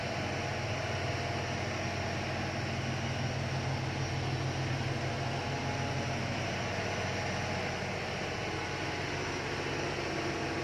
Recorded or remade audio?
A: recorded